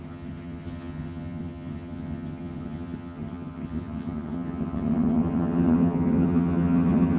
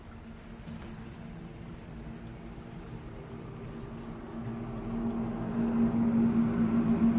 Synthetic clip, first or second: first